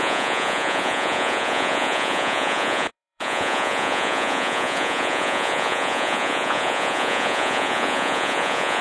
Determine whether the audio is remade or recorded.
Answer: remade